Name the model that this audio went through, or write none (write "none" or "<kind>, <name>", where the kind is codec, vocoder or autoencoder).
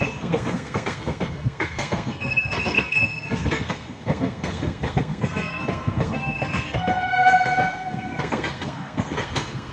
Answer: codec, SNAC